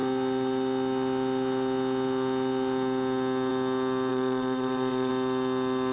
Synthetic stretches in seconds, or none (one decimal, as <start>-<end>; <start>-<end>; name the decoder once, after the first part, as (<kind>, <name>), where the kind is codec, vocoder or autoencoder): 4.1-5.1 (vocoder, WaveNeXt)